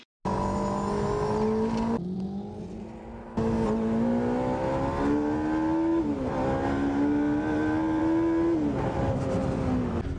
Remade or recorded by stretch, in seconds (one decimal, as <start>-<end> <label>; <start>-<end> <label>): 0.0-10.2 recorded